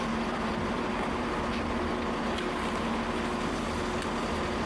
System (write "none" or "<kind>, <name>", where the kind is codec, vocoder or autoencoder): none